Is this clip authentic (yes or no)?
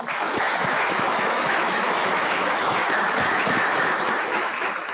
no